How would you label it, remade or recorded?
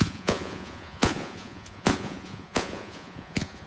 remade